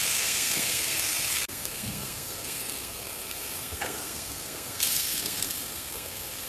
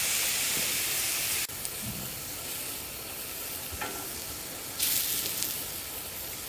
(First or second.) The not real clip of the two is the first